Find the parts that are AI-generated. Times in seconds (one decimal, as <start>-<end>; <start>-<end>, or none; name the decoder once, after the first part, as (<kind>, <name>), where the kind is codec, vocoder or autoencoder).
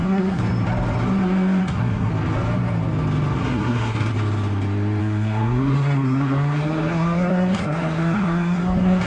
0.0-0.4 (codec, SNAC); 1.6-2.1; 3.4-4.1; 5.0-9.1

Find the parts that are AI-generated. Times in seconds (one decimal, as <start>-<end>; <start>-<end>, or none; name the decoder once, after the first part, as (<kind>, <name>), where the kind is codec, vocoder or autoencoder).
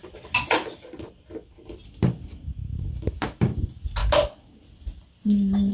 none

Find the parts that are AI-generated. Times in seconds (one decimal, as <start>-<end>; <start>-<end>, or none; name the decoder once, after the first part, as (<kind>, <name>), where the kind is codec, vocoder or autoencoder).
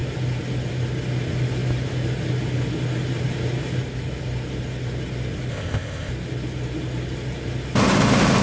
5.5-6.1 (codec, ZipCodec)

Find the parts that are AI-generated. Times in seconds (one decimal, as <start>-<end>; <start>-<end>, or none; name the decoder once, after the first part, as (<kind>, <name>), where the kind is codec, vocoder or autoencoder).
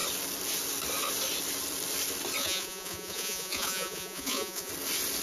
2.4-4.7 (vocoder, Vocos)